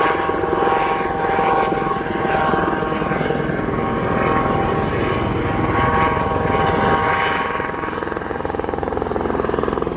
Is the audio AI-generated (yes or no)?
no